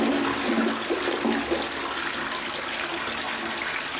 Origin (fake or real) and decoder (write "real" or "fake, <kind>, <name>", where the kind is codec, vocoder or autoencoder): real